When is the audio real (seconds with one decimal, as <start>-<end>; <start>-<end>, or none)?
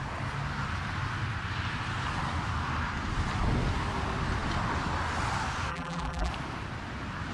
0.0-5.7; 6.3-7.3